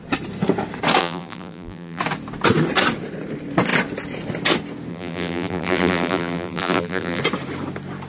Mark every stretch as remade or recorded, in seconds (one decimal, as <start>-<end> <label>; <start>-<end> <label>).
0.0-1.0 recorded; 1.0-2.0 remade; 2.0-4.9 recorded; 4.9-7.2 remade; 7.2-8.1 recorded